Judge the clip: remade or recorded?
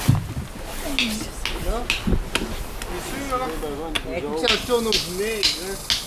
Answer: recorded